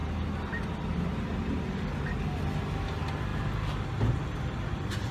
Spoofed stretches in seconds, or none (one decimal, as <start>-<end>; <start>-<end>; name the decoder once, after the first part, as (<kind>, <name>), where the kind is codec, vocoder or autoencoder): none